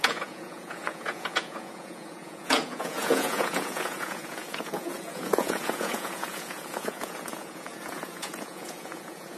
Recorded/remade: remade